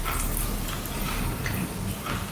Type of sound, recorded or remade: recorded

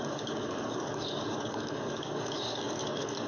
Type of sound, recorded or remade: remade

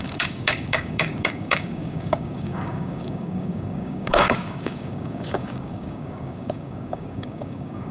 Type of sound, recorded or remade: remade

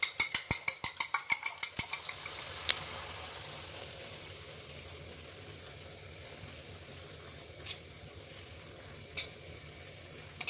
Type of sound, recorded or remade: recorded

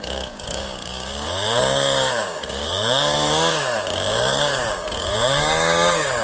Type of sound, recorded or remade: remade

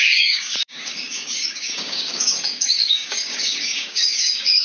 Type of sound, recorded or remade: remade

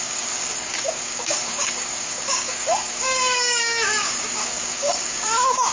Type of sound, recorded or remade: remade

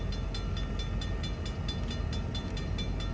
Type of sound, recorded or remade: recorded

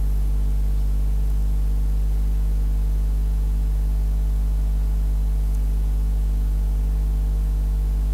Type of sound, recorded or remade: recorded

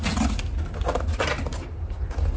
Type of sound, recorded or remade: recorded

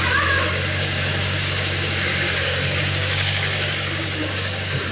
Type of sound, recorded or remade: remade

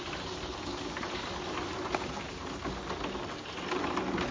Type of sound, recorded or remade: recorded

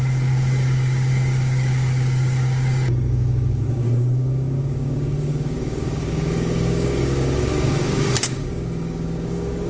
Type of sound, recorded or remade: remade